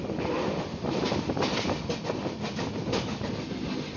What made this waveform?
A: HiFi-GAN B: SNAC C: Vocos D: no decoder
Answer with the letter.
D